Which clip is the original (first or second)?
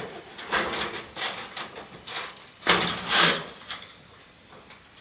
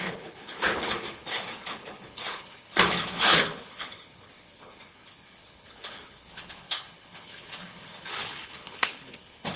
first